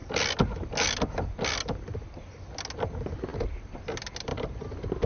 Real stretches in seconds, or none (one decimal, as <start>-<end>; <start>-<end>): 0.0-5.1